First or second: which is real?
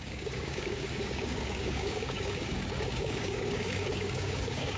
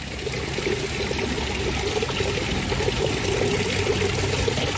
second